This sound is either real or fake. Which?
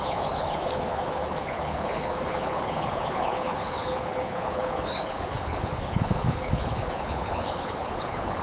fake